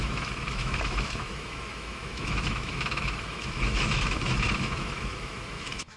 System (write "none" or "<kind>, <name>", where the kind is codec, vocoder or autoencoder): autoencoder, DAC-VAE